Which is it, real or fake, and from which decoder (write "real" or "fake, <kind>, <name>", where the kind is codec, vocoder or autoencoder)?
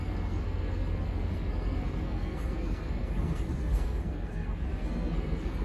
fake, codec, SNAC